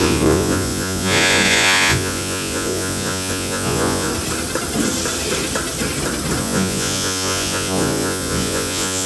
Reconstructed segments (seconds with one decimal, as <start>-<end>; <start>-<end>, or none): 0.0-4.1; 6.4-9.1